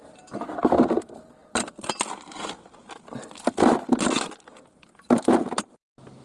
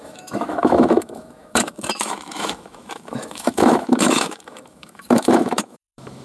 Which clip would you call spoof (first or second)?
second